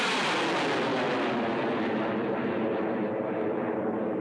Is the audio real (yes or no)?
yes